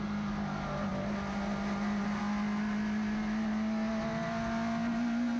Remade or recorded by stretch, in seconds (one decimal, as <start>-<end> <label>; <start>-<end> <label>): 0.0-5.4 recorded